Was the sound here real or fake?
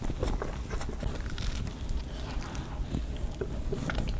real